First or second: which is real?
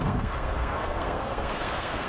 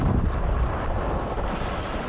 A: second